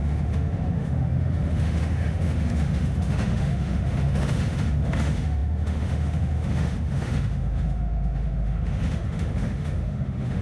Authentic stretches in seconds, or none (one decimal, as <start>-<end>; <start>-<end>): none

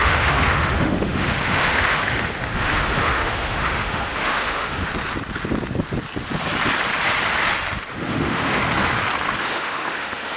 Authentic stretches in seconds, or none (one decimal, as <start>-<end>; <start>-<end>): 4.9-7.9; 8.6-9.4

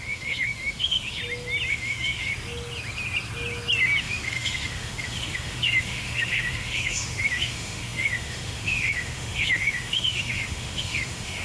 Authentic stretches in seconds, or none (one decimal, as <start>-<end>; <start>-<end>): 1.2-1.7; 2.3-4.0

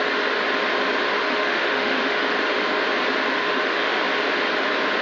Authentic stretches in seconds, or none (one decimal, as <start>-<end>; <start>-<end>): 0.0-1.2; 2.3-3.4; 4.0-5.0

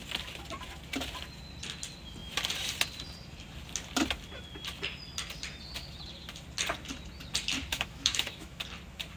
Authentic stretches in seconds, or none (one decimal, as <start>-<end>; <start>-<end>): 0.0-7.7; 8.6-9.2

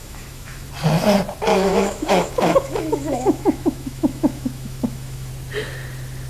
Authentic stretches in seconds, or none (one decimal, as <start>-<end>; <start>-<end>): 0.7-1.5; 5.3-6.3